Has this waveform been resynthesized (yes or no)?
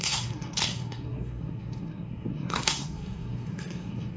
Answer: yes